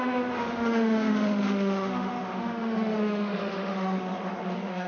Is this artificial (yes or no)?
yes